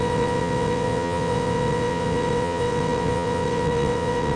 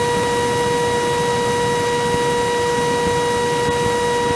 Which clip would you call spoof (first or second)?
first